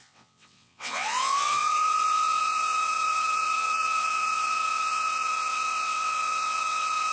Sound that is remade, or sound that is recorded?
remade